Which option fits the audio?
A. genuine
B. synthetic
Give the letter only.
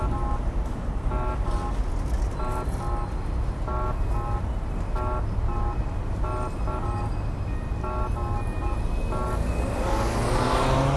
A